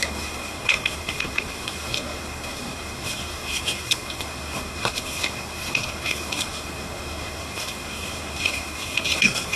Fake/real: fake